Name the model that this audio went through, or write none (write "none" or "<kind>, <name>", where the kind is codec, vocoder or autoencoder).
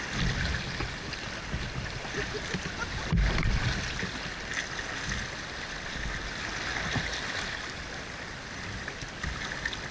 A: none